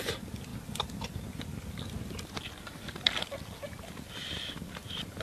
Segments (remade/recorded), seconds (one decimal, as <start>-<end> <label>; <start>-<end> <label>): 0.0-5.2 recorded